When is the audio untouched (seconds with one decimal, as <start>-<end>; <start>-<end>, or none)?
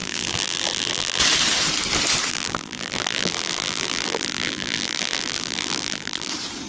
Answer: 1.2-2.3; 6.3-6.7